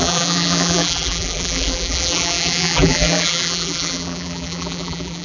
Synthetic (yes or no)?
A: yes